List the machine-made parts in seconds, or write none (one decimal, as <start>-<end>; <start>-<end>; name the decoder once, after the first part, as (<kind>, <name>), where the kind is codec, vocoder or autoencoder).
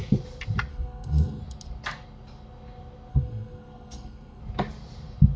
0.7-1.4 (codec, SNAC); 3.1-4.4